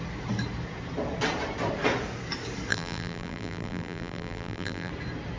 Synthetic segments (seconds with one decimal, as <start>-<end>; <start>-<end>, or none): 2.7-4.9